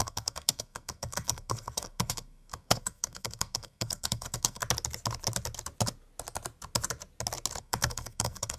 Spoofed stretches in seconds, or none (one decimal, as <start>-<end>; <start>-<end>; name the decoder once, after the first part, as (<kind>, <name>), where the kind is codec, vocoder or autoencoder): 0.0-4.6 (codec, SNAC); 7.6-8.6